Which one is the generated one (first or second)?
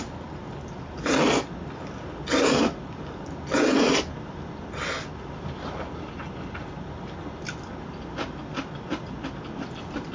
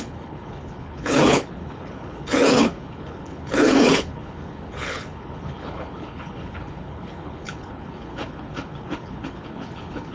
second